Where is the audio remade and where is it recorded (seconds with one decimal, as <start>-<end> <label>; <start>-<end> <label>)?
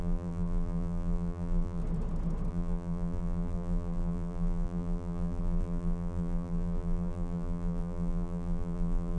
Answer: 0.0-1.8 remade; 1.8-2.5 recorded; 2.5-9.2 remade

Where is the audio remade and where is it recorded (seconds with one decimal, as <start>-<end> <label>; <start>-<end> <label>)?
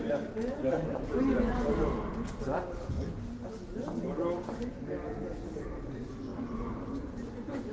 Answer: 0.0-1.2 remade; 1.2-7.7 recorded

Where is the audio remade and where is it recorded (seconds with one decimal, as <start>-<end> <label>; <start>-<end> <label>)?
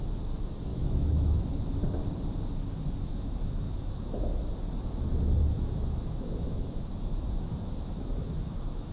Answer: 0.0-0.7 recorded; 0.7-1.4 remade; 1.4-3.1 recorded; 3.1-4.3 remade; 4.3-5.4 recorded; 5.4-8.9 remade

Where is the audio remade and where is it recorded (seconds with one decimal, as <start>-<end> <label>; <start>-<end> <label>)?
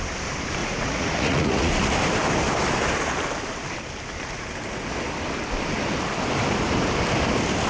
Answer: 0.0-0.6 recorded; 0.6-1.7 remade; 1.7-7.7 recorded